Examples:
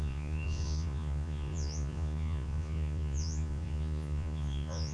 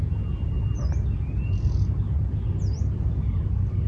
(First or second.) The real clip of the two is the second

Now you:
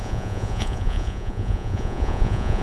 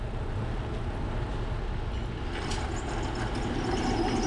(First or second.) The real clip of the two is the second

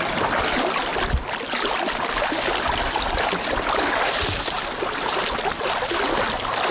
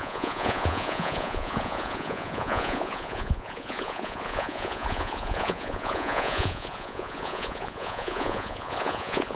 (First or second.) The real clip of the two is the first